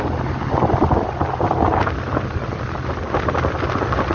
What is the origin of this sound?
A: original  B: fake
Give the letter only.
A